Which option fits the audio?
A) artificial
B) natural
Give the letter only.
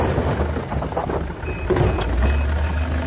B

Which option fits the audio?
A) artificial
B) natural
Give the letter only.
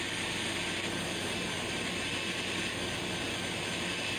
B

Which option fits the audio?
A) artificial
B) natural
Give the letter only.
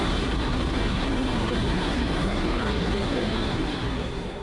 A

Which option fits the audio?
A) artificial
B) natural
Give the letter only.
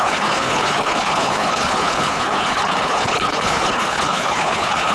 A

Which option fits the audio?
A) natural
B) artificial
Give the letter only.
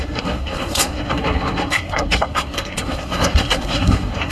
B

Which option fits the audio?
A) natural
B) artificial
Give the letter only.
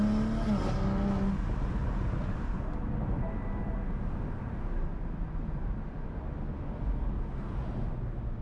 A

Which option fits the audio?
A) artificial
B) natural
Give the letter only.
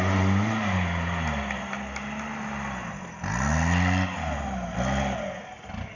B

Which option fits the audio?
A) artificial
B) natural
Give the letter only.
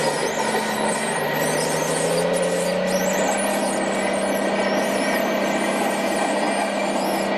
B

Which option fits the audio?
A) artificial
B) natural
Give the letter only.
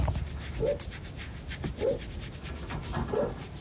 B